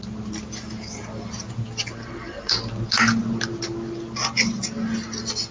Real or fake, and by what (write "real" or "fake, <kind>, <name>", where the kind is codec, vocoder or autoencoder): real